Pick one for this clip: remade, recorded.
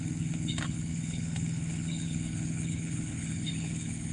remade